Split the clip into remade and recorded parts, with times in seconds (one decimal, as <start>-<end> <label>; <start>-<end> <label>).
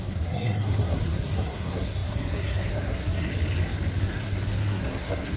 0.0-3.3 remade; 3.3-4.0 recorded; 4.0-5.4 remade